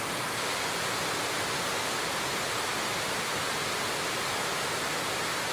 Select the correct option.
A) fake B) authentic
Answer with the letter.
B